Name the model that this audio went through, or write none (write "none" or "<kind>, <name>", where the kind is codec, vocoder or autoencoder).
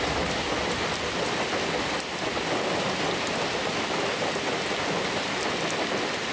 none